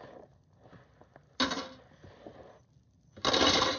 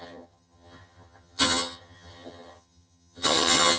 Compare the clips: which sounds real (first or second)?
first